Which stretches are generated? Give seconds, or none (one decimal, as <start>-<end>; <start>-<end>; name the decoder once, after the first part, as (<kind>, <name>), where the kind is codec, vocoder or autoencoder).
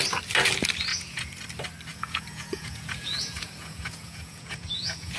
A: 0.9-1.4 (vocoder, Vocos); 1.9-5.2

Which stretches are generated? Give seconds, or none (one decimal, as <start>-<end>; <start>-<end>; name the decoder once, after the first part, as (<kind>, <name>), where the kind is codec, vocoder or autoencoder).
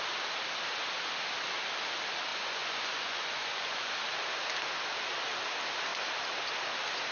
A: 2.3-3.9 (vocoder, Vocos)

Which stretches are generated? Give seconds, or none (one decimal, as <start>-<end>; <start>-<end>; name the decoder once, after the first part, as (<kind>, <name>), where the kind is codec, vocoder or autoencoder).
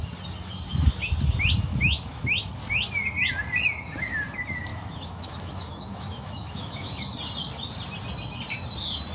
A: 1.7-2.5 (autoencoder, DAC-VAE); 4.7-7.0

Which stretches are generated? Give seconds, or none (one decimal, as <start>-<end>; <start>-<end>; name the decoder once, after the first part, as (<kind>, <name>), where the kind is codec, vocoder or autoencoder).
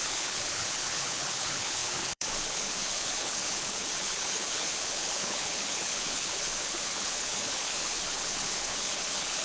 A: 0.0-9.4 (codec, HILCodec)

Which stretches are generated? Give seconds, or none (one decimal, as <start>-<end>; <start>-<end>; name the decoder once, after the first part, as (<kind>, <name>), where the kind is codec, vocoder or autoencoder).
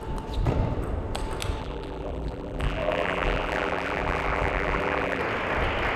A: 1.6-5.2 (vocoder, BigVGAN v2)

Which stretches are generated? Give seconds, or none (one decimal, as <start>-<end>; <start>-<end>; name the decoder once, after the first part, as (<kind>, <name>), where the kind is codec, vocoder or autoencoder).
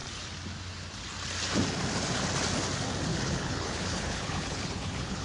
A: 3.1-5.2 (codec, HILCodec)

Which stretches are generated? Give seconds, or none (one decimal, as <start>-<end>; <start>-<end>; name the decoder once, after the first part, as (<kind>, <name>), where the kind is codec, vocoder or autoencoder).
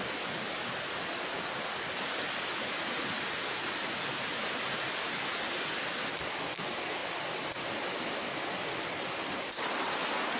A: none